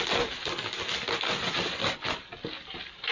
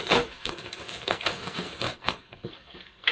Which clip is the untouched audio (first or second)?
first